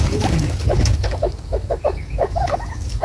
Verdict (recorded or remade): remade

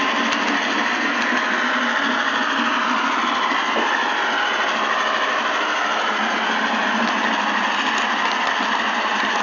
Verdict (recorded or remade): recorded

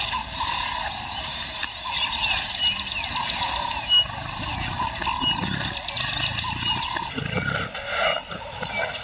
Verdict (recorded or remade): recorded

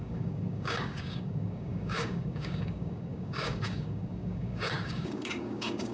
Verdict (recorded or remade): remade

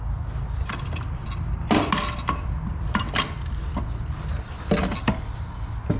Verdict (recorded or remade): recorded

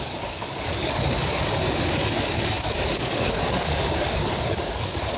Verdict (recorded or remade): remade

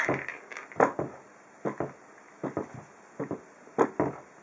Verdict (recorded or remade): recorded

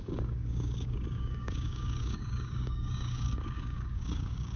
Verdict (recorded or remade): remade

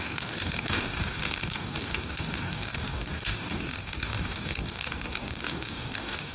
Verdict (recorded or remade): remade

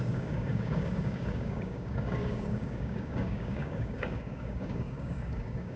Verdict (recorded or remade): remade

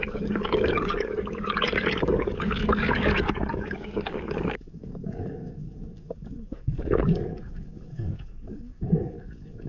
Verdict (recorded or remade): remade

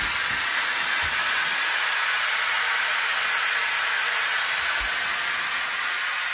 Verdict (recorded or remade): recorded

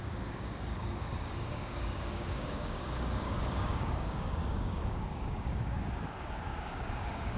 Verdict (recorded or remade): remade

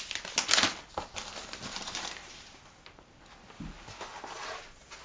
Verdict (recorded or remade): recorded